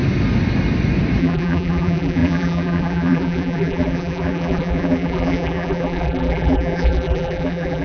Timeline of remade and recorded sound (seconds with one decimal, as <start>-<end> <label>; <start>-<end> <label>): 0.0-1.2 recorded; 1.2-7.8 remade